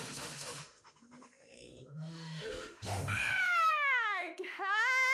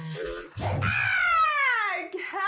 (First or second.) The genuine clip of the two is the second